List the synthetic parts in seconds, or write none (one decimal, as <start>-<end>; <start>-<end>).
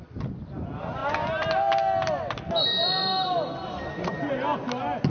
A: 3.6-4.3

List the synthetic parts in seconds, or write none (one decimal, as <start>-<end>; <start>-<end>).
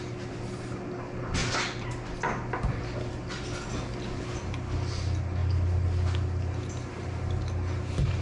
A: none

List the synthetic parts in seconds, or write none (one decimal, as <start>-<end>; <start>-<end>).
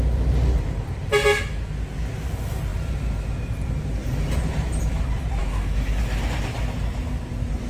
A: 5.4-6.0